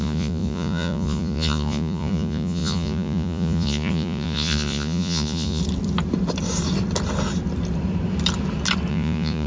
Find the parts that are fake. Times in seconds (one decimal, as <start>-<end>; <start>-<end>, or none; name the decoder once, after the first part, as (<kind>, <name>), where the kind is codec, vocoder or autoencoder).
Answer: 0.0-5.6 (vocoder, Vocos); 8.9-9.5